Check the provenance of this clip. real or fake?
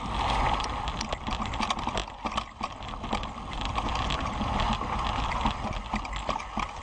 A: real